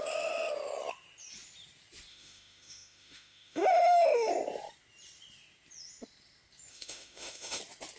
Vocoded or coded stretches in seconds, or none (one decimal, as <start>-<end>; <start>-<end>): 2.1-4.3; 6.7-7.6